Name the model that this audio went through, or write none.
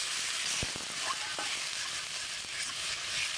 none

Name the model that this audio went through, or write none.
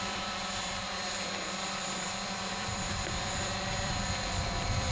vocoder, BigVGAN v2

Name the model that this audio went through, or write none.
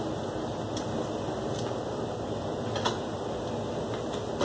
none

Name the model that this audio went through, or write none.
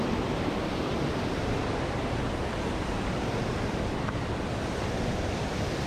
none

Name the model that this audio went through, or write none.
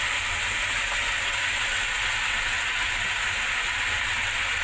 none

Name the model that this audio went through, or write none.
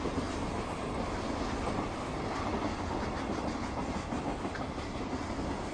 none